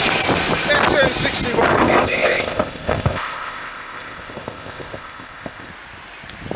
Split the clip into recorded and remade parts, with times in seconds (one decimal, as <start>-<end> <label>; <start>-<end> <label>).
0.0-1.7 recorded; 1.7-5.7 remade; 5.7-6.6 recorded